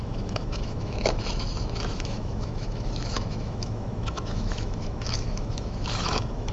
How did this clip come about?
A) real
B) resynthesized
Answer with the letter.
B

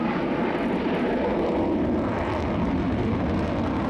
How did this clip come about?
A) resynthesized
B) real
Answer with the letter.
B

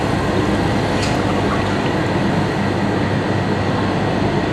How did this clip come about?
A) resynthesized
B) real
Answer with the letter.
B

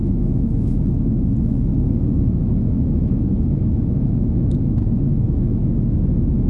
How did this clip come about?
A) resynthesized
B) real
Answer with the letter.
A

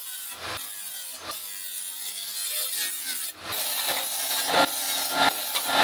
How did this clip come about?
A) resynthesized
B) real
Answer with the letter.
B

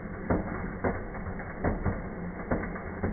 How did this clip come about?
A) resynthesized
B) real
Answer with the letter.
B